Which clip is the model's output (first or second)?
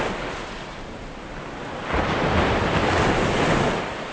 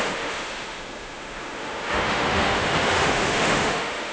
second